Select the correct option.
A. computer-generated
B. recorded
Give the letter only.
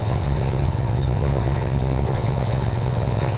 A